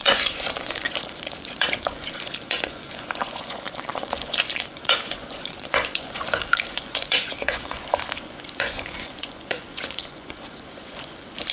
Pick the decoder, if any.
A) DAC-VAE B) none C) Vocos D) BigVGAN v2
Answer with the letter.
C